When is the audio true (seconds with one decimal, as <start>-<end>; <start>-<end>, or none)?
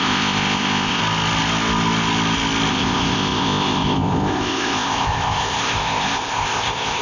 1.0-2.7